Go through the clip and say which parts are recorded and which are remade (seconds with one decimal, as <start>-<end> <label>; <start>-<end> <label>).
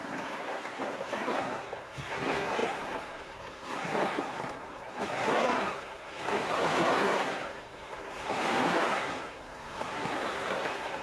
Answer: 0.0-11.0 remade